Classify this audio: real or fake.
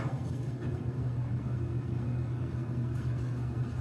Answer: fake